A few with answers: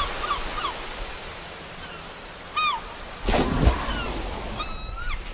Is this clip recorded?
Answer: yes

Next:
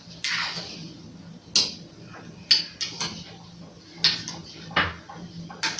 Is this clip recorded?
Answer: yes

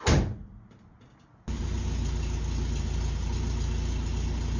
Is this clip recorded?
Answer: yes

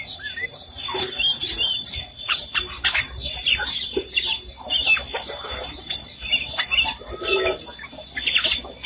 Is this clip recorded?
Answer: yes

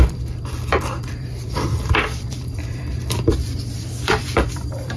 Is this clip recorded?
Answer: no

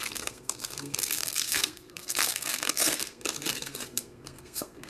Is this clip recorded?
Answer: no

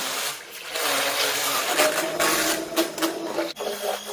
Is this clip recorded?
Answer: yes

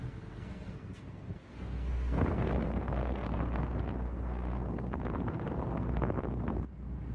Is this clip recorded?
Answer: no